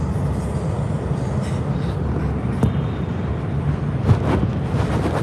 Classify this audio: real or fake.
real